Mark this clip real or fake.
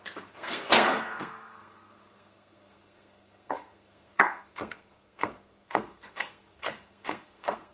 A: fake